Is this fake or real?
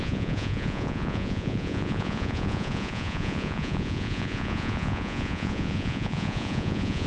fake